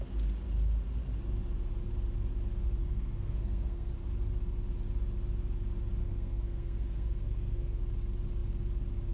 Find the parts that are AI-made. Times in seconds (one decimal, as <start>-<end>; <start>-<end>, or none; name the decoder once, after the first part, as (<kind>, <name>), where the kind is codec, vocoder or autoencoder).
2.8-3.9 (codec, SNAC); 6.0-7.8